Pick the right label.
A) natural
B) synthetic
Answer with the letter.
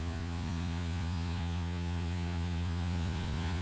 B